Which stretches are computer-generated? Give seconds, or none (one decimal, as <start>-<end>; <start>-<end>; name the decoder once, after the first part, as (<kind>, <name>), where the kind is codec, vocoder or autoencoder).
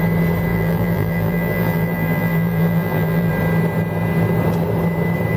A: 0.5-3.3 (vocoder, BigVGAN v2)